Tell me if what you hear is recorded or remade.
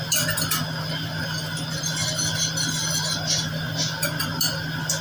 recorded